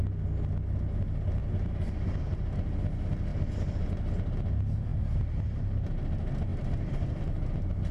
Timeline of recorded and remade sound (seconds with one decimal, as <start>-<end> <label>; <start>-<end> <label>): 0.0-1.4 recorded; 1.4-2.2 remade; 2.2-3.3 recorded; 3.3-3.9 remade; 3.9-6.5 recorded; 6.5-7.2 remade; 7.2-7.9 recorded